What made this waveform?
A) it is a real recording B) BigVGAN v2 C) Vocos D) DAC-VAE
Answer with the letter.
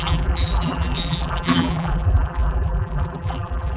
B